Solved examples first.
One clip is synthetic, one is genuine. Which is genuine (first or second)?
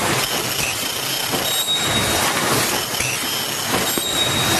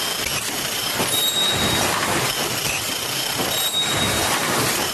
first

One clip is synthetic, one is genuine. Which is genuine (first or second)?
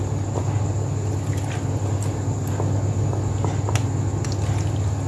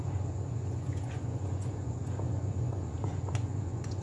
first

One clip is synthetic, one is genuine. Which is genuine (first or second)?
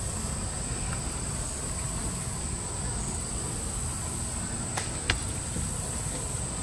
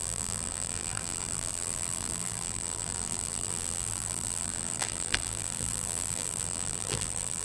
first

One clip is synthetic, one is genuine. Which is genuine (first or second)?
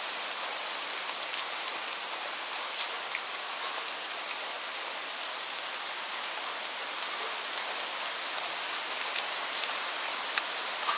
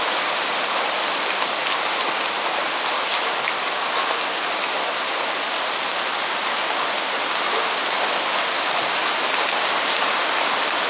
second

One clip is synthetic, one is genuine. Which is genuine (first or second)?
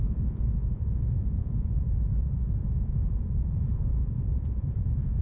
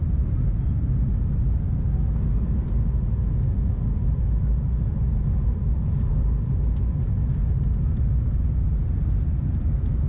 second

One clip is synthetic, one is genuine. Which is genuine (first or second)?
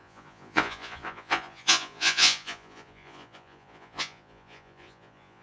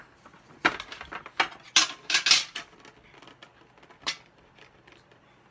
second